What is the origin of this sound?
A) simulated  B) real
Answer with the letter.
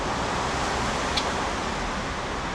B